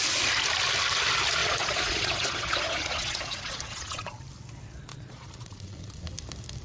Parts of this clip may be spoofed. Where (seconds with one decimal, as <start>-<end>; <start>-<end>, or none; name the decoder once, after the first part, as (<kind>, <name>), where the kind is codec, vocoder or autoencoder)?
1.4-4.2 (vocoder, Vocos); 4.9-6.1